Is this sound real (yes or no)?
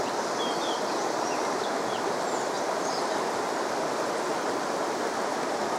yes